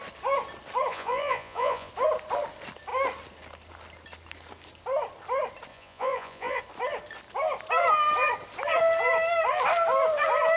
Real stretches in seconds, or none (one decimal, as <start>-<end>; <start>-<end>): 0.0-0.9; 1.9-5.7; 6.6-10.6